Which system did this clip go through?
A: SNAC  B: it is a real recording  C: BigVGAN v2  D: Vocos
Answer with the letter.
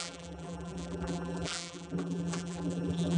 C